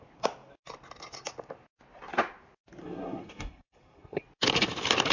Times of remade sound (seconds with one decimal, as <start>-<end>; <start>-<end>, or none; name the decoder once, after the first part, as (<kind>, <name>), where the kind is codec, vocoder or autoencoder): 2.8-4.2 (codec, SNAC)